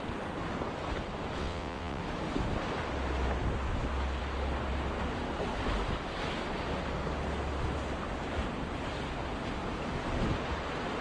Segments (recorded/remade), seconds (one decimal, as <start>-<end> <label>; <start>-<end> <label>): 0.0-1.4 recorded; 1.4-2.0 remade; 2.0-11.0 recorded